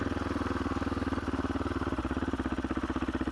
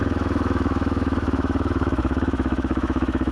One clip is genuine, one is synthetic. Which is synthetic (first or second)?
second